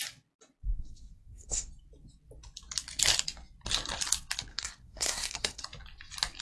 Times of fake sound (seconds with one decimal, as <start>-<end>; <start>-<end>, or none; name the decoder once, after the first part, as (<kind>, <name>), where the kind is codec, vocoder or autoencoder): 0.7-1.7 (codec, SNAC); 4.5-5.6